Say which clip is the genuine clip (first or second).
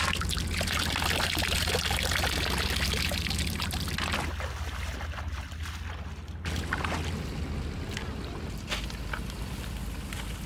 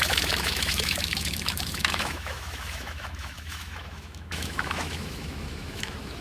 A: first